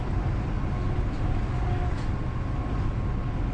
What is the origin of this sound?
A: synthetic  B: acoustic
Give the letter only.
B